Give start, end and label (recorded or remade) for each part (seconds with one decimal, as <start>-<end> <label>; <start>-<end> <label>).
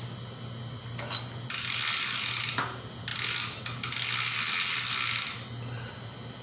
0.0-6.4 recorded